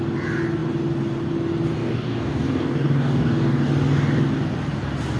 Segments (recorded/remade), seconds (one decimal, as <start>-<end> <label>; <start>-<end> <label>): 0.0-1.8 recorded; 1.8-3.7 remade; 3.7-5.2 recorded